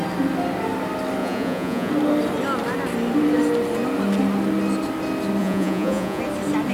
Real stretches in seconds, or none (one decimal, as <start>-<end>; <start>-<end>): 0.0-1.2; 1.9-5.4; 6.2-6.7